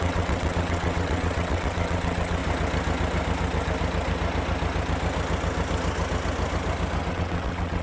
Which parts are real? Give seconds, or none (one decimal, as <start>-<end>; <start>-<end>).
2.4-7.1